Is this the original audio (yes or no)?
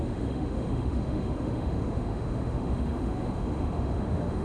no